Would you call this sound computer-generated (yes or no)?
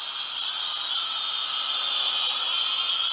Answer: no